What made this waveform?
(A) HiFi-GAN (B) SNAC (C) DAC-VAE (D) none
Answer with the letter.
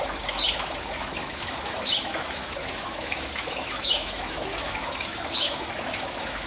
C